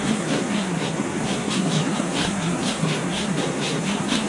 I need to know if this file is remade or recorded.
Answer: remade